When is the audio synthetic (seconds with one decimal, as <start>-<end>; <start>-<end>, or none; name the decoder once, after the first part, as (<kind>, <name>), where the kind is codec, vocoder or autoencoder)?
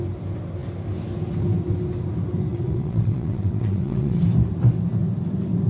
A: 2.5-4.2 (vocoder, WaveNeXt)